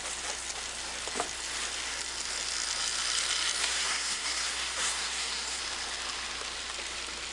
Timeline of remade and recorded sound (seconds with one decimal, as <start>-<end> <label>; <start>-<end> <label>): 0.0-3.6 recorded; 3.6-5.6 remade; 5.6-7.3 recorded